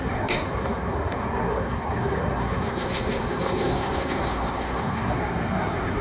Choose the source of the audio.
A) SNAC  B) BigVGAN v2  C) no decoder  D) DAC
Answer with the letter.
A